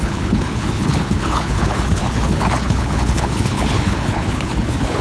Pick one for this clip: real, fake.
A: fake